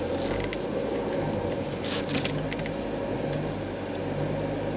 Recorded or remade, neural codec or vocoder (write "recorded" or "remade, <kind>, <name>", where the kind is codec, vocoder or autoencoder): recorded